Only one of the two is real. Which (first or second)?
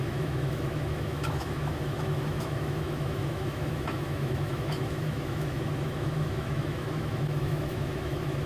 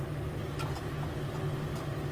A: second